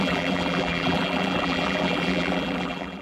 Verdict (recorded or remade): remade